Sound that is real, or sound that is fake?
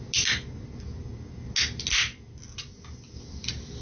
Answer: real